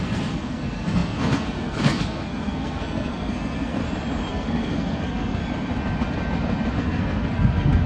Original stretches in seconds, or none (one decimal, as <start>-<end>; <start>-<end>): 3.8-4.3; 5.4-6.7